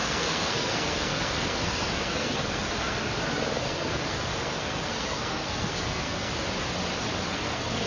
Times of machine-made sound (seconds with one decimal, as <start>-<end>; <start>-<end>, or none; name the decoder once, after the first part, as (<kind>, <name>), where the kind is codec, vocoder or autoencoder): 0.0-3.1 (codec, SNAC); 3.6-6.3; 7.3-7.9